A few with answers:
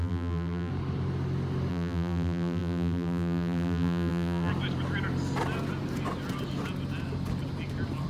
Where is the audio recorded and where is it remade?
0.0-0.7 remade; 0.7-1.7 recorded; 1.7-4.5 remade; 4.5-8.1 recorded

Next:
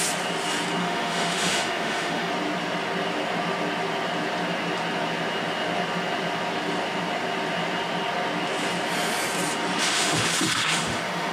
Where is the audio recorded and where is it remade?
0.0-0.8 recorded; 0.8-2.3 remade; 2.3-9.8 recorded; 9.8-11.3 remade

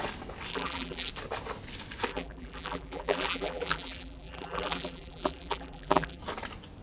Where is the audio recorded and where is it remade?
0.0-0.5 recorded; 0.5-1.1 remade; 1.1-2.1 recorded; 2.1-6.2 remade; 6.2-6.8 recorded

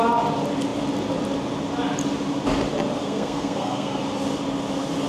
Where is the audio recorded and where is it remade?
0.0-3.0 recorded; 3.0-4.0 remade; 4.0-5.1 recorded

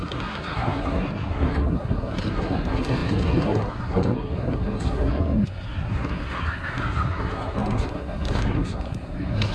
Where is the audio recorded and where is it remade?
0.0-9.5 remade

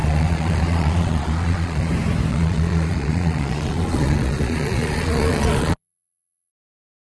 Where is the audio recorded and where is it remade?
0.0-1.9 remade; 1.9-2.3 recorded; 2.3-6.5 remade; 6.5-7.0 recorded

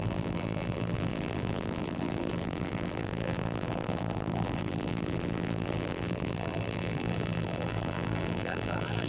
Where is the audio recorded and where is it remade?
0.0-9.1 remade